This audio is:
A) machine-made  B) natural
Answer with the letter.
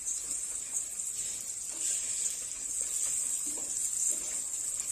B